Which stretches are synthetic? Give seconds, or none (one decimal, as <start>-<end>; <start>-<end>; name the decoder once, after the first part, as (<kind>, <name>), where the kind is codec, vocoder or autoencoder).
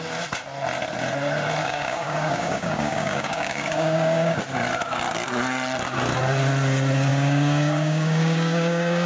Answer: 1.6-4.4 (codec, DAC); 7.1-9.1